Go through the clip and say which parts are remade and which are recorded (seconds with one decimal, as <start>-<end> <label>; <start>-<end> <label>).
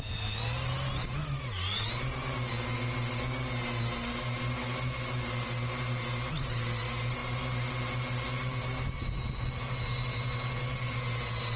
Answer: 0.0-11.6 recorded